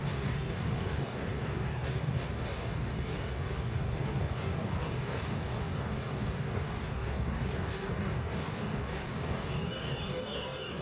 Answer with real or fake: fake